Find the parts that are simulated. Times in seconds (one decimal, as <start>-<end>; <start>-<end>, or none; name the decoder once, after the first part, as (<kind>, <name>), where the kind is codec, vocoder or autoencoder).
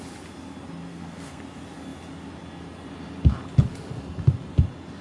0.9-1.4 (codec, SNAC)